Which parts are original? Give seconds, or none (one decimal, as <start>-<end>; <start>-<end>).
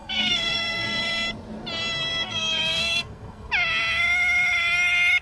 1.0-2.1; 3.5-5.2